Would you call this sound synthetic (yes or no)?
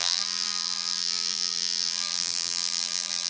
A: yes